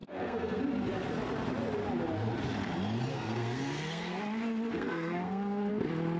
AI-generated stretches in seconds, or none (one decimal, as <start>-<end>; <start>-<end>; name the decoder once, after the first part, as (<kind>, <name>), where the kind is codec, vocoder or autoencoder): 0.0-0.6 (codec, SNAC); 3.1-4.2; 4.7-5.7